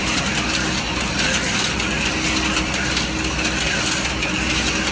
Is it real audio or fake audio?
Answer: real